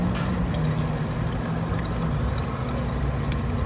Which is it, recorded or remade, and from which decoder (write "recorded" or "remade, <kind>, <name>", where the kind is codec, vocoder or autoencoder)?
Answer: recorded